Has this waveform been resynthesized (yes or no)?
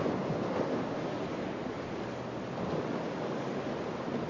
no